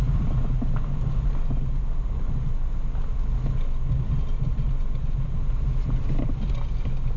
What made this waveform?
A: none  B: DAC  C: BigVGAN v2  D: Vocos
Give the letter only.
A